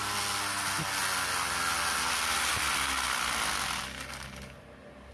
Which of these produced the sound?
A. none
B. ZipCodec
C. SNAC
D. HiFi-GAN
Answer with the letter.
A